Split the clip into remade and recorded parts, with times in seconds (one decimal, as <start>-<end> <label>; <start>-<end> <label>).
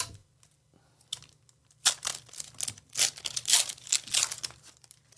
0.0-5.2 recorded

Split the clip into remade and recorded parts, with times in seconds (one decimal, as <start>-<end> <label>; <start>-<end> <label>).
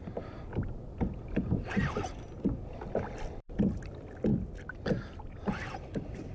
0.0-6.3 recorded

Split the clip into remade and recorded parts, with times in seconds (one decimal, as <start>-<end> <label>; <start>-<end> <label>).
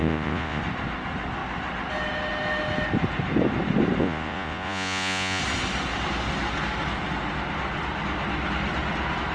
0.0-0.6 remade; 0.6-4.0 recorded; 4.0-5.4 remade; 5.4-9.3 recorded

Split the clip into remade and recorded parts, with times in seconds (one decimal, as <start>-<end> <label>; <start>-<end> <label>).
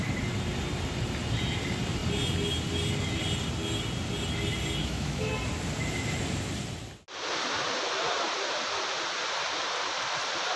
0.0-4.8 recorded; 4.8-5.3 remade; 5.3-10.6 recorded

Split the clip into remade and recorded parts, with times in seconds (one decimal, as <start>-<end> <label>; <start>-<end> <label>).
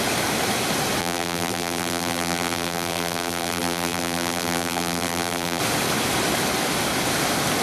0.0-1.0 recorded; 1.0-5.6 remade; 5.6-7.6 recorded